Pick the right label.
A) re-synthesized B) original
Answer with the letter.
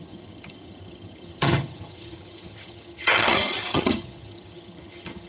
A